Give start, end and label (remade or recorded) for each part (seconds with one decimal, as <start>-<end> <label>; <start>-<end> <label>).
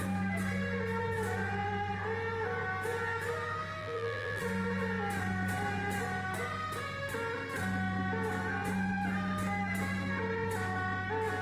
0.0-3.8 recorded; 3.8-4.4 remade; 4.4-11.4 recorded